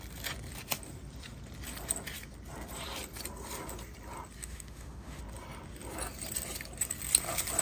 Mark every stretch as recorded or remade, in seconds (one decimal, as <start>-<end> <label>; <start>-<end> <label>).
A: 0.0-4.4 recorded; 4.4-5.2 remade; 5.2-7.6 recorded